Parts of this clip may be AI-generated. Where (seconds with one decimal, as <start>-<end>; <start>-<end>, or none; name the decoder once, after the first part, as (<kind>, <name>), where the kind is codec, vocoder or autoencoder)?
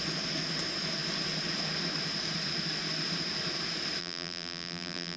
4.0-5.2 (vocoder, BigVGAN v2)